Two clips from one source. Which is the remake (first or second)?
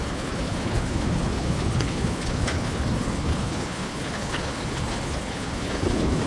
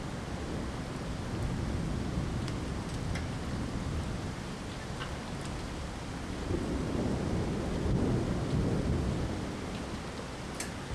first